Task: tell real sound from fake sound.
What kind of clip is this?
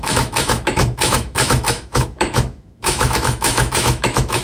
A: fake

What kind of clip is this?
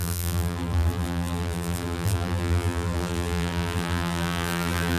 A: fake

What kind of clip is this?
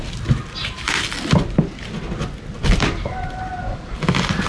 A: real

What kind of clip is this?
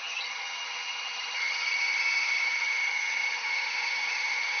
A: fake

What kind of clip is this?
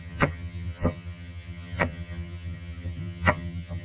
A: fake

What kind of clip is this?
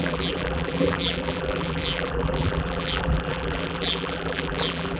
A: fake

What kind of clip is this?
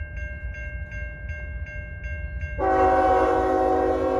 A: real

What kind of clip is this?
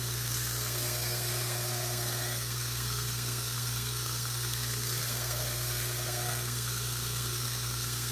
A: fake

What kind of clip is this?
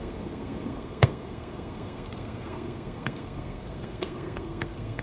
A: fake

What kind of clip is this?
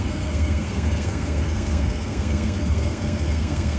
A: fake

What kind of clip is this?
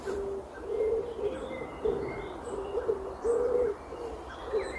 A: fake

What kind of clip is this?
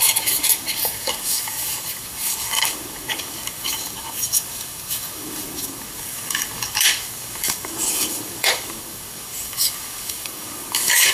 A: fake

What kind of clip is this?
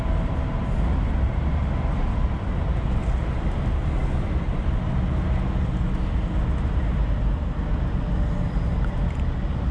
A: real